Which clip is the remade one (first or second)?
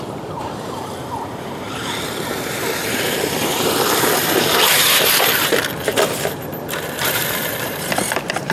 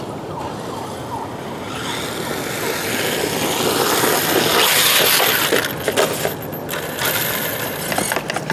first